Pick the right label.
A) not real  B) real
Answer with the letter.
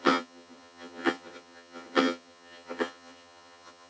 A